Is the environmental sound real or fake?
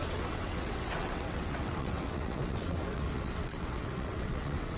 fake